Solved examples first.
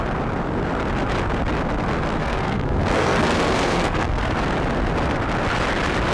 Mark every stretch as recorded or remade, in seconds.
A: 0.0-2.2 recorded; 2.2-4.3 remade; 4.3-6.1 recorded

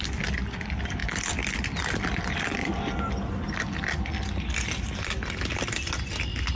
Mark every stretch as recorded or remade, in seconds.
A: 0.0-6.6 recorded

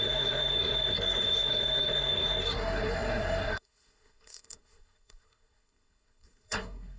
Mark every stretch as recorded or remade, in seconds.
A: 0.0-7.0 remade

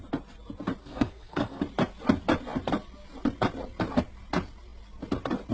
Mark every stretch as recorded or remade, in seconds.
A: 0.0-0.8 recorded; 0.8-1.6 remade; 1.6-5.5 recorded

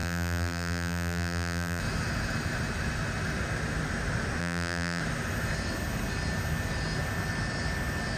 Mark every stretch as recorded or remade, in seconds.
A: 0.0-1.8 remade; 1.8-4.4 recorded; 4.4-5.0 remade; 5.0-8.2 recorded